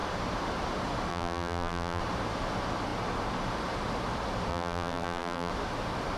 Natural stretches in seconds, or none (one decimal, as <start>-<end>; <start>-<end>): 0.0-1.1; 2.0-4.5; 5.5-6.2